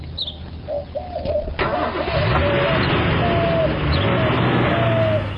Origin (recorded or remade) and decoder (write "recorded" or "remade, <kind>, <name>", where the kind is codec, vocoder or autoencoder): recorded